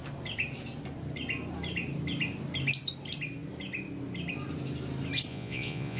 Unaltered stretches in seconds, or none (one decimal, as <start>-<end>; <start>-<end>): 0.0-5.3